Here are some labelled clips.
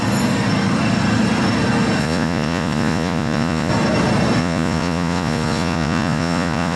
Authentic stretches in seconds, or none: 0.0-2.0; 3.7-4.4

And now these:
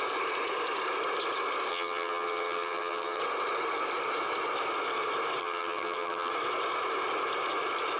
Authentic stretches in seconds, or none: 0.0-1.7; 3.2-5.4; 6.3-8.0

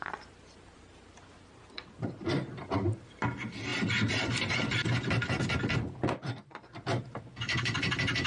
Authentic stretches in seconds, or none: 0.0-8.3

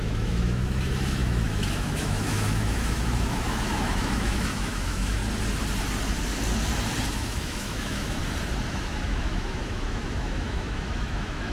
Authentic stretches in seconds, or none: 5.2-7.1; 8.2-8.7

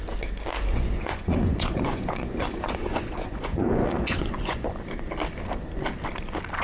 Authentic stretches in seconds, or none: 0.0-0.7; 4.7-6.6

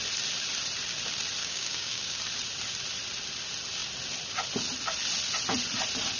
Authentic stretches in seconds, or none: 0.0-1.4; 2.2-6.2

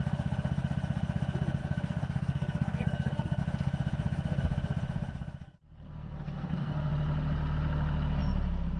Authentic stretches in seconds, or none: 0.0-1.6; 3.4-5.4; 6.9-8.8

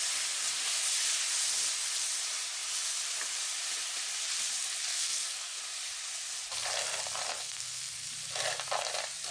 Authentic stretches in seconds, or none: 0.0-4.9; 5.6-7.4; 8.1-9.3